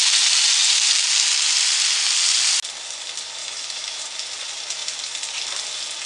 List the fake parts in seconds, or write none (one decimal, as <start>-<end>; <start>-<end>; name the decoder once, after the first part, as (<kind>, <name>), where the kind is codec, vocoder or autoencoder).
3.4-4.0 (autoencoder, DAC-VAE)